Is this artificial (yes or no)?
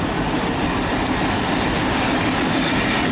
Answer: no